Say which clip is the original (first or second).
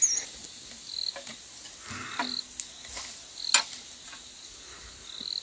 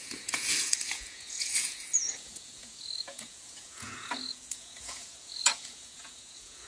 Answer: first